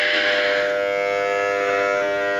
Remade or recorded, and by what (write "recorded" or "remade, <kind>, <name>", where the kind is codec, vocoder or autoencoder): recorded